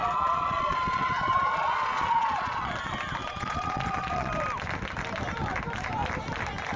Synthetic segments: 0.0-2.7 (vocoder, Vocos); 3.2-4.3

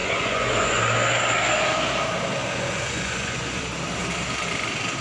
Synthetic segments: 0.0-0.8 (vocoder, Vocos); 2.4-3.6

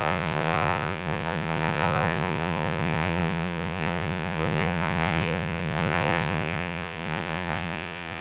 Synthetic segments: 0.0-8.2 (vocoder, Vocos)

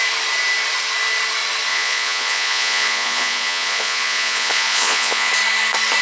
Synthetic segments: 1.7-5.3 (vocoder, Vocos)